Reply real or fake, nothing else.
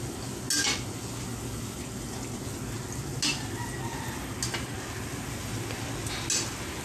real